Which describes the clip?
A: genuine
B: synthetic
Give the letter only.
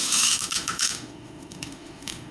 B